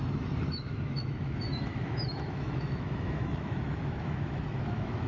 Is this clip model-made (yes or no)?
yes